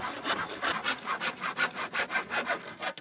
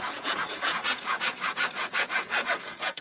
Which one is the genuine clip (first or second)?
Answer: first